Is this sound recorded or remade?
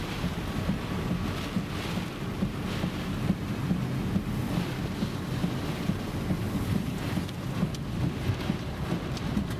recorded